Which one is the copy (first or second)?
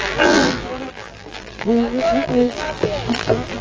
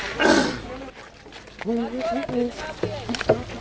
first